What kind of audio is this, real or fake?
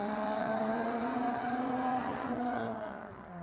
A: fake